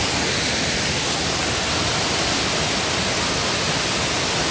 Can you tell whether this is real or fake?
real